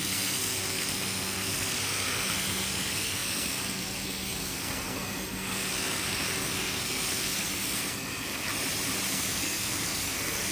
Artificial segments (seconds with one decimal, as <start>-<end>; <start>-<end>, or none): 0.0-8.5; 9.1-10.5